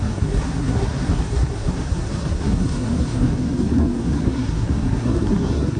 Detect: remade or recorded remade